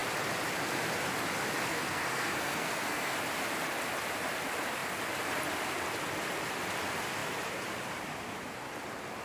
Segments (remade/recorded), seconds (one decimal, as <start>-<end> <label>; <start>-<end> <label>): 0.0-1.7 recorded; 1.7-3.2 remade; 3.2-9.2 recorded